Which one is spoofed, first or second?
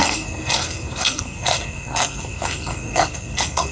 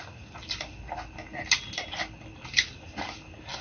first